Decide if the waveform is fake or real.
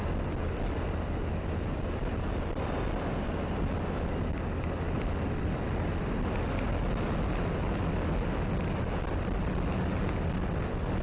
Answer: real